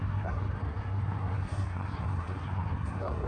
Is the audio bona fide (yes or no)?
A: no